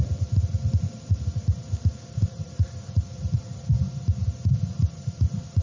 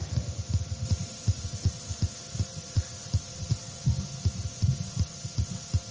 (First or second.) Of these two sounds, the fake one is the first